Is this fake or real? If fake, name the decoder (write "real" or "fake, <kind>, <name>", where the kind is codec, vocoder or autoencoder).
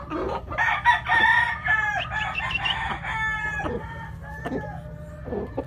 real